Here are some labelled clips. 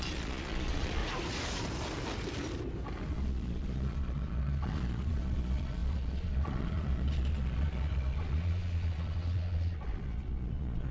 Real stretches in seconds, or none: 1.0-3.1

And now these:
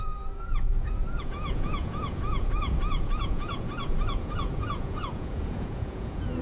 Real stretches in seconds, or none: none